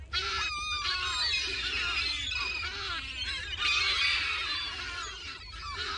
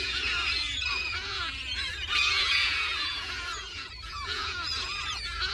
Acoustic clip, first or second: first